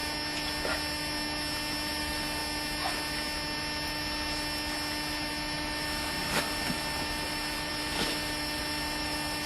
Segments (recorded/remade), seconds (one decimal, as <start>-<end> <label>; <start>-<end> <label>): 0.0-2.0 recorded; 2.0-2.4 remade; 2.4-5.3 recorded; 5.3-9.5 remade